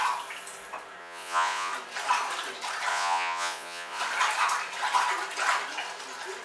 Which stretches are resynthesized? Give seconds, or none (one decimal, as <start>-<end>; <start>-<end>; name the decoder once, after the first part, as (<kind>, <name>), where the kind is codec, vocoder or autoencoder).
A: 1.0-1.7 (vocoder, Vocos); 2.9-4.0